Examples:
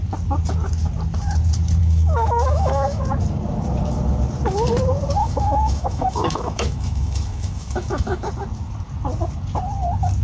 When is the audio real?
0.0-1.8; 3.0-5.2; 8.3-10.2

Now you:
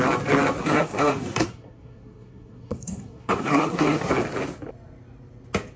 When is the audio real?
0.0-0.6; 4.1-5.8